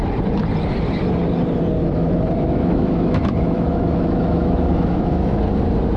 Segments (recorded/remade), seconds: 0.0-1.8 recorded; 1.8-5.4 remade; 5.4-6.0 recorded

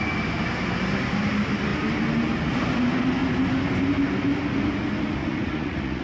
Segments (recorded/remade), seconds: 0.0-5.2 recorded; 5.2-6.0 remade